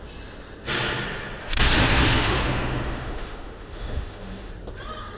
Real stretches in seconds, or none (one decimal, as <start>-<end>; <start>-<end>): 0.0-1.4; 4.5-5.2